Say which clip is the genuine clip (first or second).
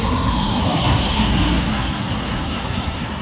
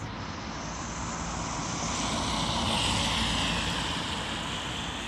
second